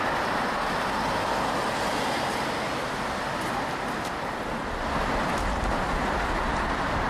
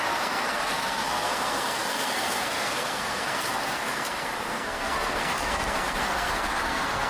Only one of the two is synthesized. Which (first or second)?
second